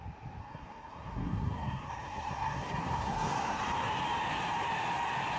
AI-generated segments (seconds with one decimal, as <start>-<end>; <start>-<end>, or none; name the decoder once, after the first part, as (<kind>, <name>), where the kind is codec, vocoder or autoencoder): 0.4-3.6 (codec, SNAC)